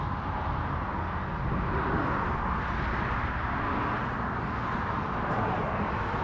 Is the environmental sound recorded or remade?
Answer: recorded